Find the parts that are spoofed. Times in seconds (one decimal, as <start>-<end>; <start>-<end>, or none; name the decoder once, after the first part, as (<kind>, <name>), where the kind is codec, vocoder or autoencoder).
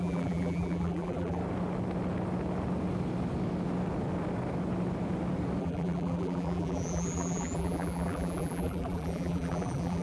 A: 0.0-1.4 (vocoder, BigVGAN v2); 5.6-10.0